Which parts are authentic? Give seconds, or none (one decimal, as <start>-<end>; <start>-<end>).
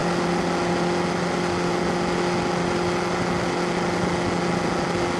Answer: 0.0-5.2